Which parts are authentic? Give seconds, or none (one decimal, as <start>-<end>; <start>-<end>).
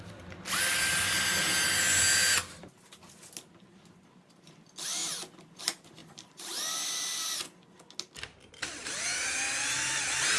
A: 0.0-2.4; 3.0-6.0; 6.6-10.4